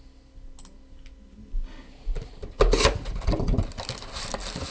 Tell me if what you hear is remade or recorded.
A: recorded